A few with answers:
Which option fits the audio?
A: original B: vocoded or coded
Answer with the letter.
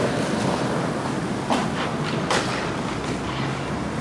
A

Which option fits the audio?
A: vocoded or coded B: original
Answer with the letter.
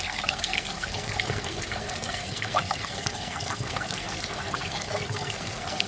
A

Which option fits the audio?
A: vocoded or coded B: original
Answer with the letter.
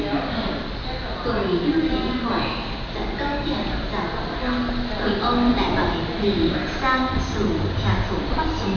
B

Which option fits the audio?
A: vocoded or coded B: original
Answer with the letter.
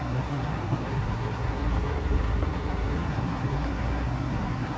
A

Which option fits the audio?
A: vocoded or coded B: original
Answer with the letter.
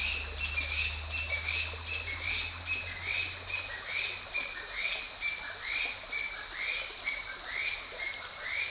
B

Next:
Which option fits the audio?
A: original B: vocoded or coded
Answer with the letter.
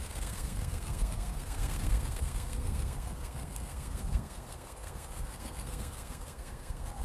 B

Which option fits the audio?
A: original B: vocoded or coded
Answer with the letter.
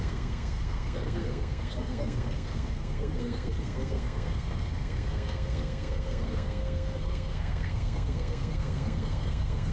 B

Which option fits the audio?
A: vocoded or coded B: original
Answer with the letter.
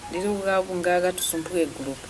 B